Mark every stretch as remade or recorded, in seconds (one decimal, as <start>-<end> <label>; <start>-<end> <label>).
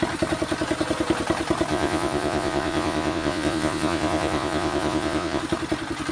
0.0-1.7 recorded; 1.7-5.4 remade; 5.4-6.1 recorded